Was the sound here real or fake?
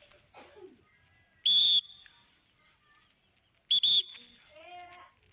real